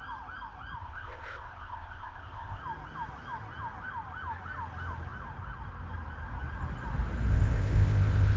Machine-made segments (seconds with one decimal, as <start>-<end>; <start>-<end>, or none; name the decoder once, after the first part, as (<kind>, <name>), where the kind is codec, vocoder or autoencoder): 0.8-2.6 (codec, ZipCodec); 7.3-8.4